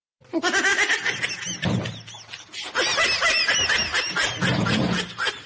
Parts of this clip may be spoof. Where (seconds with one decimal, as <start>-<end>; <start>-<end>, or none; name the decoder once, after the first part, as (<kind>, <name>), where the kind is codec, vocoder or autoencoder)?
none